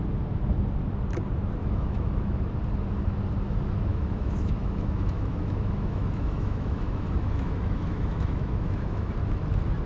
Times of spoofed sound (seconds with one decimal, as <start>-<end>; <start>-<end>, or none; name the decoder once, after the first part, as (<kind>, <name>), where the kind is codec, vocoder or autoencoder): 1.6-2.4 (autoencoder, DAC-VAE); 3.9-9.1